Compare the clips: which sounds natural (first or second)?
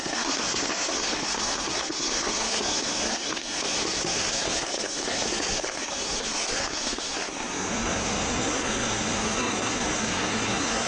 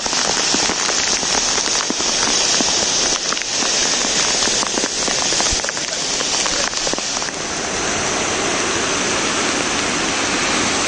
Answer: second